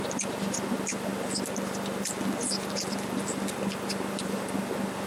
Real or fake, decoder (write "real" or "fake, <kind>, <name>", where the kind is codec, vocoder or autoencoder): real